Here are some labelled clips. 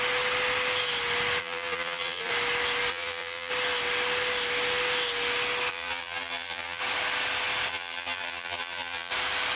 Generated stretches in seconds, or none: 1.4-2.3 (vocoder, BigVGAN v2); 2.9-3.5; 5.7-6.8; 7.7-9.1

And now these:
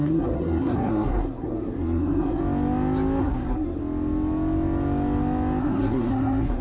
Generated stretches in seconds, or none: 0.0-2.4 (codec, SNAC); 3.2-3.8; 5.6-6.6